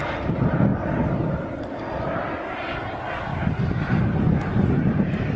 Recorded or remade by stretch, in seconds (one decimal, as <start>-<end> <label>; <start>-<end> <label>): 0.0-5.4 recorded